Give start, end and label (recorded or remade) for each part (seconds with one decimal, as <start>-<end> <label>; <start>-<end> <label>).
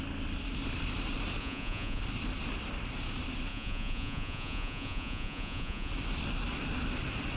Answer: 0.0-1.4 recorded; 1.4-2.0 remade; 2.0-3.5 recorded; 3.5-5.9 remade; 5.9-7.4 recorded